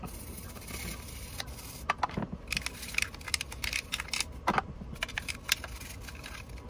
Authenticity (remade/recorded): recorded